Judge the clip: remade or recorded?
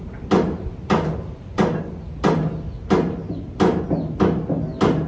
recorded